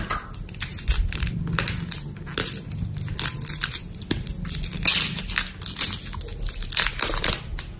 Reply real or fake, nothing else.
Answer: real